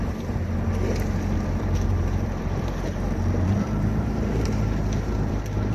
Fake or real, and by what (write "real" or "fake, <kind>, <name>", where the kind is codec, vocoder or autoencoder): fake, vocoder, BigVGAN v2